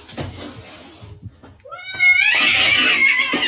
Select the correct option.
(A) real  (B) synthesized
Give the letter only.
A